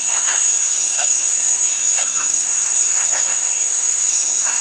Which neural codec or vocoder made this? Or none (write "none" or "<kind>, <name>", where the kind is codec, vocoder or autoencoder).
codec, SNAC